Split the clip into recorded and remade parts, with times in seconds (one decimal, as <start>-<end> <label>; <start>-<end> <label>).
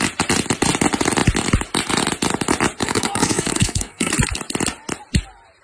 0.0-2.8 recorded; 2.8-4.1 remade; 4.1-5.6 recorded